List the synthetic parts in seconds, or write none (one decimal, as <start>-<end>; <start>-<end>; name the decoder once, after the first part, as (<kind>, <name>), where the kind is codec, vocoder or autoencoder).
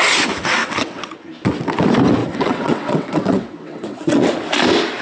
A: 0.6-1.2 (vocoder, WaveNeXt); 2.2-4.3